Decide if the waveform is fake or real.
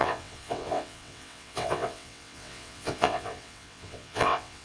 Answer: fake